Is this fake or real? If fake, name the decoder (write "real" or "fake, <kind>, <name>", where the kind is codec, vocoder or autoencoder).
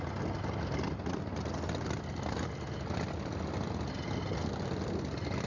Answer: real